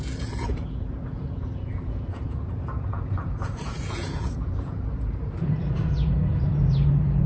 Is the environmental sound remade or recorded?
remade